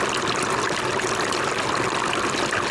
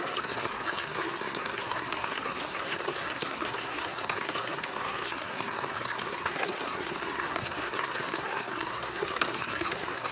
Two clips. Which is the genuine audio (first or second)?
first